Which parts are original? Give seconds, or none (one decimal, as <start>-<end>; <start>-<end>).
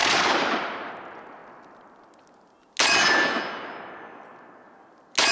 0.9-5.3